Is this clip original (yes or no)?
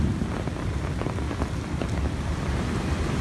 yes